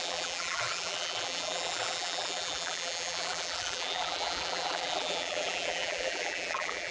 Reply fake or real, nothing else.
fake